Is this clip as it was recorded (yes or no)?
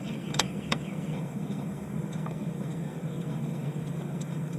no